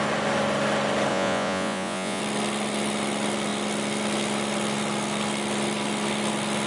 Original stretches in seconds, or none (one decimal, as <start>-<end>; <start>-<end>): 0.0-1.1; 2.2-6.7